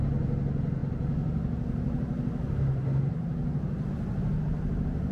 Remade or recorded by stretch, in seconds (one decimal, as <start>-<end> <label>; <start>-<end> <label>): 0.0-5.1 recorded